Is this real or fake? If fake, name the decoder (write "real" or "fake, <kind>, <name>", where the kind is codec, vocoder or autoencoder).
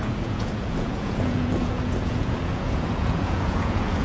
fake, vocoder, Vocos